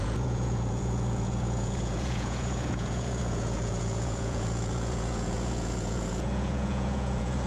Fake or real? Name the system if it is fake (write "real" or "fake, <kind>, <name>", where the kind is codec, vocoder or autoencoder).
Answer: fake, vocoder, Vocos